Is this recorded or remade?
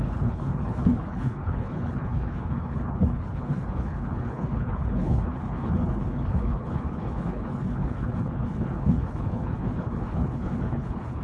remade